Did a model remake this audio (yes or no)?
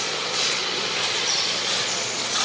yes